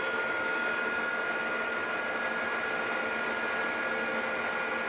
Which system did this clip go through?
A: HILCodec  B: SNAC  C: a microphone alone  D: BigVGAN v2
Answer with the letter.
C